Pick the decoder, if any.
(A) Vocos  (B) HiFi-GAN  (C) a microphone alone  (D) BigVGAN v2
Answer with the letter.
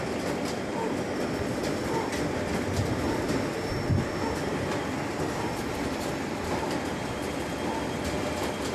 D